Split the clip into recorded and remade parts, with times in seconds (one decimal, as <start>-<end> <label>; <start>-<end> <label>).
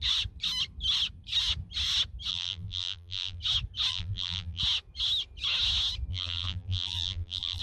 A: 0.0-2.3 recorded; 2.3-3.4 remade; 3.4-3.9 recorded; 3.9-4.6 remade; 4.6-6.1 recorded; 6.1-7.6 remade